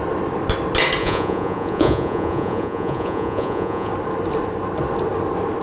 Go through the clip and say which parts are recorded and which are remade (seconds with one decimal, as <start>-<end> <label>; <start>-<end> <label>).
0.0-1.0 recorded; 1.0-3.9 remade; 3.9-5.6 recorded

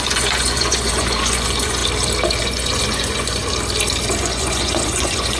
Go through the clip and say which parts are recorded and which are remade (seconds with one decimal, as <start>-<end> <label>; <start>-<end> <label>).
0.0-1.8 remade; 1.8-2.4 recorded; 2.4-3.4 remade; 3.4-4.2 recorded; 4.2-5.4 remade

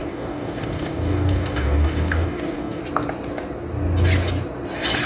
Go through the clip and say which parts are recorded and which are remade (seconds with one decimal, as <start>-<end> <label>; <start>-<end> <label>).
0.0-2.8 remade; 2.8-5.1 recorded

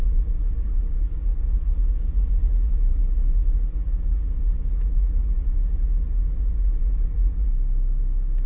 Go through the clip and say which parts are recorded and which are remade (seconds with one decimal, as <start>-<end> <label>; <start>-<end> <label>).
0.0-7.5 remade; 7.5-8.5 recorded